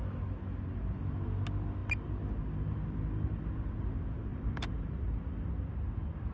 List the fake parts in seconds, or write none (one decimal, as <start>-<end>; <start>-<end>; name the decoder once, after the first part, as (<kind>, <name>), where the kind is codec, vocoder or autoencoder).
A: 4.3-5.0 (vocoder, BigVGAN v2)